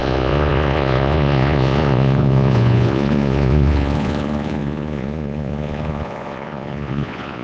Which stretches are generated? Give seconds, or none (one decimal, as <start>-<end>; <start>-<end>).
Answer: 0.0-7.4